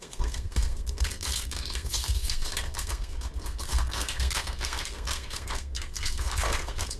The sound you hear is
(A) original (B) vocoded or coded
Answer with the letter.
B